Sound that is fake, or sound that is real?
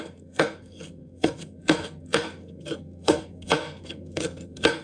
fake